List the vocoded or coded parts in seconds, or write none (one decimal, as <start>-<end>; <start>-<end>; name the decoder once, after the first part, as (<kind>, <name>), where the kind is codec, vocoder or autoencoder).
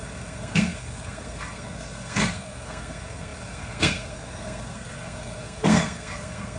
0.0-6.6 (codec, SNAC)